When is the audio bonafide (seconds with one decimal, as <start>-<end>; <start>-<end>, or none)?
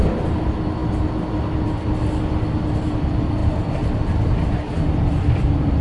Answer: 0.0-5.8